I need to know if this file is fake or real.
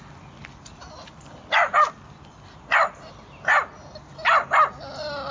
real